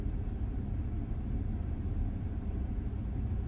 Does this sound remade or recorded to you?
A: remade